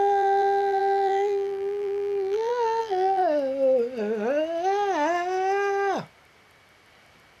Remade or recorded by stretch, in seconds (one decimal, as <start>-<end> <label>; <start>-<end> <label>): 0.0-3.2 remade; 3.2-7.4 recorded